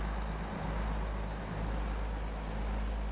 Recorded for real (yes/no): yes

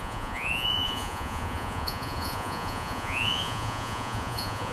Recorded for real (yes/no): no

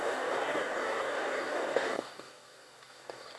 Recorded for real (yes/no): no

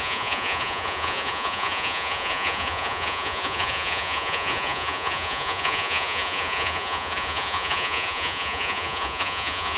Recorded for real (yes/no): no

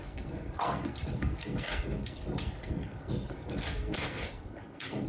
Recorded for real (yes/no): no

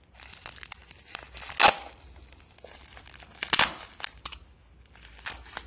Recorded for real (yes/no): yes